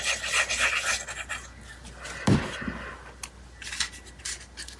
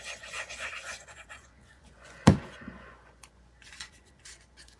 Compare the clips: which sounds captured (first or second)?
first